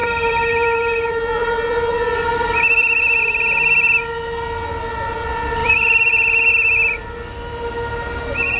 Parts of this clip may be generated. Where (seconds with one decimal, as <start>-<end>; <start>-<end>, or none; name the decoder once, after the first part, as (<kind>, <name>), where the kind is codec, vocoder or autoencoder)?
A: 0.0-3.2 (vocoder, BigVGAN v2); 5.6-6.5